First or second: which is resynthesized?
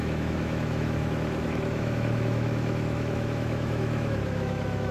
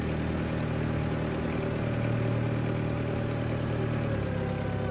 first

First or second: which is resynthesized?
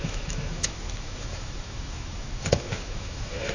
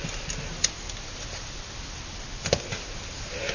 first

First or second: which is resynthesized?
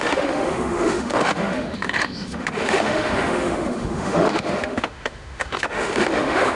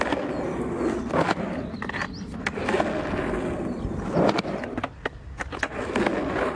first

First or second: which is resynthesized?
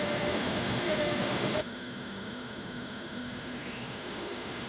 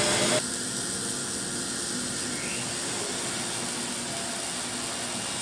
first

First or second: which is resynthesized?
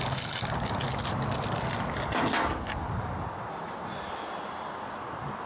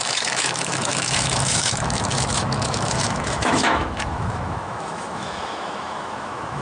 second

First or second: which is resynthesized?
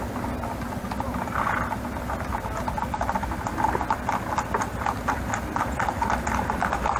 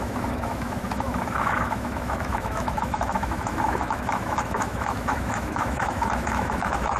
second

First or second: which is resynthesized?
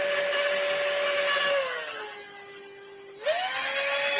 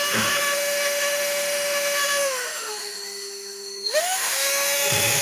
second